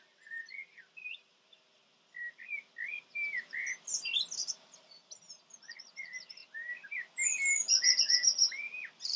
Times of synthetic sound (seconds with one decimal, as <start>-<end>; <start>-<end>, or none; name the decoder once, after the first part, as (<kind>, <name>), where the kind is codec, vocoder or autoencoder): 4.4-5.4 (vocoder, BigVGAN v2)

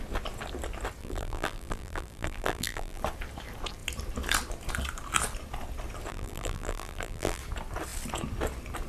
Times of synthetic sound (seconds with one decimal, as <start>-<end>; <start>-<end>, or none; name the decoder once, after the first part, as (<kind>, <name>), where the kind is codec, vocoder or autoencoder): 1.0-3.0 (vocoder, BigVGAN v2); 6.1-7.4

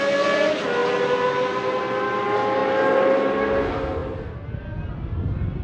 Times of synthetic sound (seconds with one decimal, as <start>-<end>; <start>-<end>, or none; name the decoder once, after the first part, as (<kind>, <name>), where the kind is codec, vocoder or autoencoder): none

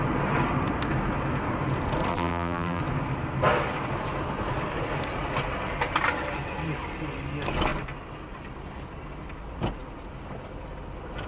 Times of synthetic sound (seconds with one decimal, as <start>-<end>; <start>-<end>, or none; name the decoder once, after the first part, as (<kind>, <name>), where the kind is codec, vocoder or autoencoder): 2.1-2.8 (vocoder, BigVGAN v2)

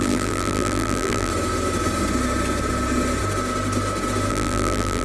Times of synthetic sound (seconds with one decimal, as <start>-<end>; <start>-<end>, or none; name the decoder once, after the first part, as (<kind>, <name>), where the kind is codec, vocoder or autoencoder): 0.0-1.3 (vocoder, BigVGAN v2); 4.3-5.0